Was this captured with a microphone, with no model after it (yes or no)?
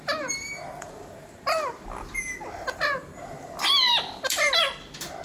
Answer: no